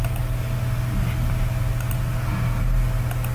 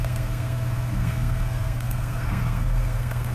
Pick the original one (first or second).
first